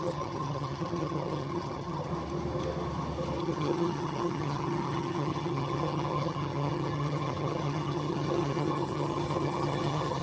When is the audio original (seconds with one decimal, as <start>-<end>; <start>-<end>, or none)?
2.1-3.4